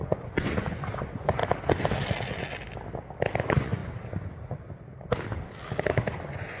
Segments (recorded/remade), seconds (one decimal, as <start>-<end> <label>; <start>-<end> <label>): 0.0-1.4 remade; 1.4-3.4 recorded; 3.4-3.8 remade; 3.8-6.0 recorded; 6.0-6.6 remade